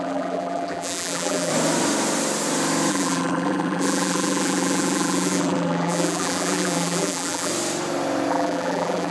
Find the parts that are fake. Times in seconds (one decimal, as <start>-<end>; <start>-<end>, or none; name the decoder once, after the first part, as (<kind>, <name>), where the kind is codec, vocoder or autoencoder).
0.0-1.5 (vocoder, BigVGAN v2); 2.9-7.5; 8.3-9.1